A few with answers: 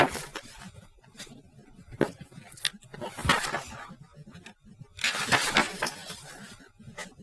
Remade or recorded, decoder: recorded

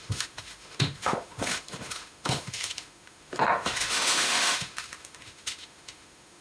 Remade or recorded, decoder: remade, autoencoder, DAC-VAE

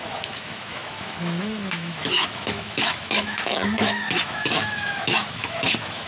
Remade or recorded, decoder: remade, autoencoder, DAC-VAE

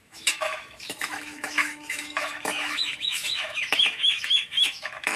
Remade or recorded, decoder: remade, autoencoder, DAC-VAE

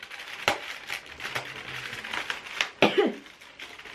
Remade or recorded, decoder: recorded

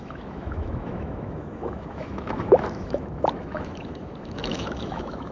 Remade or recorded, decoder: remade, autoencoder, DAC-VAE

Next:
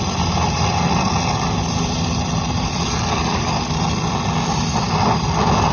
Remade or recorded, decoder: recorded